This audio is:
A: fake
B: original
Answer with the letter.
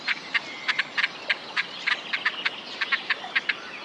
B